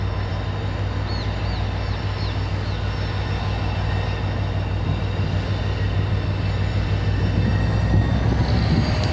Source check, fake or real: real